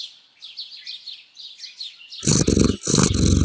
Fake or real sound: real